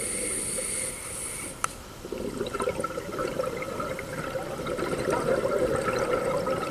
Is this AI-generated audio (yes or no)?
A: yes